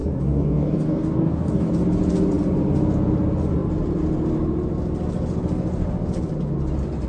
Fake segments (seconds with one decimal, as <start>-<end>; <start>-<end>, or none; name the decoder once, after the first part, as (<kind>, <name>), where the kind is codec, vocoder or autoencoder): 0.0-1.7 (codec, DAC)